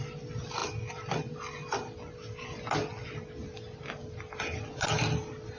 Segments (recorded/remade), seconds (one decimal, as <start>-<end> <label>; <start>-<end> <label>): 0.0-5.6 recorded